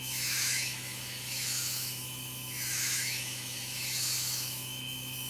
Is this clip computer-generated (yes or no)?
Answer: yes